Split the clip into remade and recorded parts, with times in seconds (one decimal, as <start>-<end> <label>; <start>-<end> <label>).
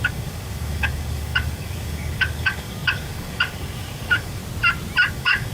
0.0-4.4 remade; 4.4-5.1 recorded; 5.1-5.5 remade